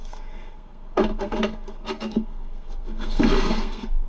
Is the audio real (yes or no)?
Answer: no